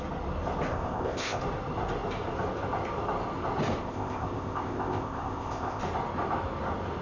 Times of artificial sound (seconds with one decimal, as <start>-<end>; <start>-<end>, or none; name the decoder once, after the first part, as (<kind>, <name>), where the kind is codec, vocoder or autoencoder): 0.7-1.4 (codec, ZipCodec); 3.8-5.8